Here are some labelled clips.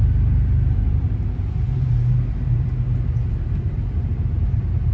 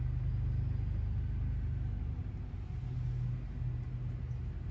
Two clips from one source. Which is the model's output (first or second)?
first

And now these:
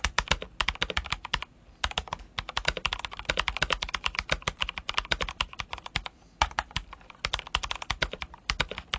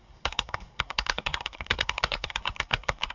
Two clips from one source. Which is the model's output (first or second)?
second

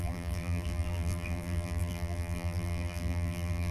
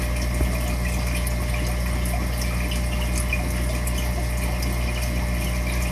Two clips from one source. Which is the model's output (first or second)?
first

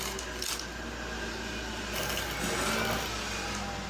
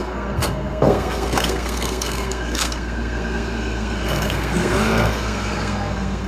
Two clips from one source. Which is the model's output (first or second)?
second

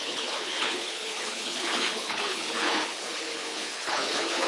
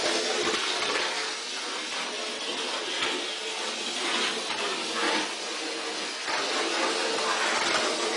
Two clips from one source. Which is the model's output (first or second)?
first